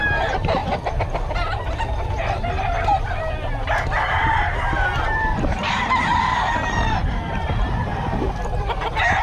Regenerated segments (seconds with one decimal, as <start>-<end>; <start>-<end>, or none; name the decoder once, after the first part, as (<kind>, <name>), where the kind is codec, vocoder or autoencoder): 0.0-0.6 (vocoder, BigVGAN v2); 4.1-7.9